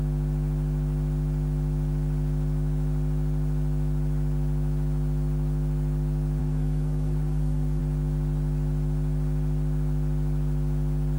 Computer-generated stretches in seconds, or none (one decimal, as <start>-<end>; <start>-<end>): 6.4-7.8